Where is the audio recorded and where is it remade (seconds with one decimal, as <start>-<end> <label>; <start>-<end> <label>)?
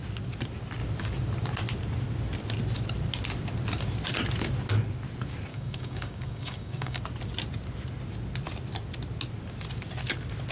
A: 0.0-5.5 recorded; 5.5-7.0 remade; 7.0-10.5 recorded